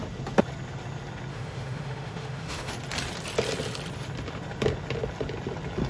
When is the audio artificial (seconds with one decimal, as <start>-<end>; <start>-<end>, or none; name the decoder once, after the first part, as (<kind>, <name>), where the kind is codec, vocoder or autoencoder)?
1.3-2.7 (autoencoder, DAC-VAE)